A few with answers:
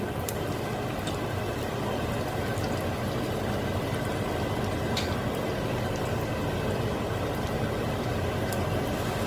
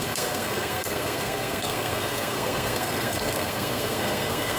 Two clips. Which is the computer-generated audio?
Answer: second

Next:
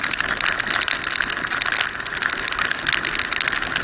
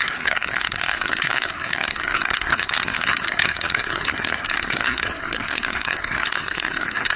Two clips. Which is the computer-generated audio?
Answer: second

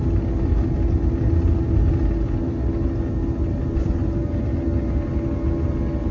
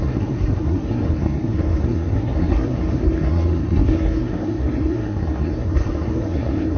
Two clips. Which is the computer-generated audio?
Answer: second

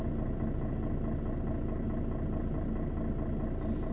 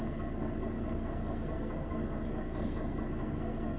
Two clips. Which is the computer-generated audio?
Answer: second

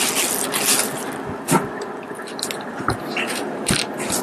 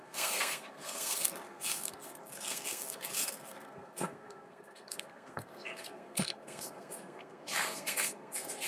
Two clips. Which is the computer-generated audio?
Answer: second